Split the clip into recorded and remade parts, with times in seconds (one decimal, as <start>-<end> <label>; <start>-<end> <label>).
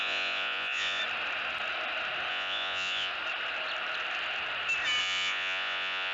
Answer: 0.0-1.0 remade; 1.0-2.3 recorded; 2.3-3.1 remade; 3.1-5.0 recorded; 5.0-6.1 remade